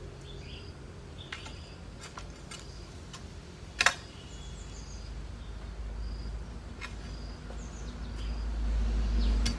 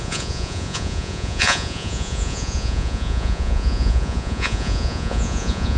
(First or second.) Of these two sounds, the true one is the first